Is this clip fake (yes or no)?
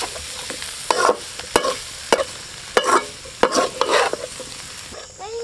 no